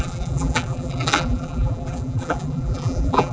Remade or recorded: remade